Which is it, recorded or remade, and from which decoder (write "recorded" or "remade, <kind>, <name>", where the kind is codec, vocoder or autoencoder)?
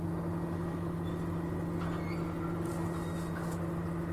recorded